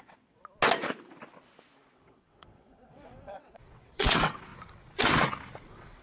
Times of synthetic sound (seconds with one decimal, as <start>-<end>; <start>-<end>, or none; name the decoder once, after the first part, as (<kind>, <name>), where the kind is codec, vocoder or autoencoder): 0.0-0.4 (vocoder, WaveNeXt); 1.9-4.5; 5.6-6.0